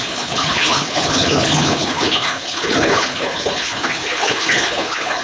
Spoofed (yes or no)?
yes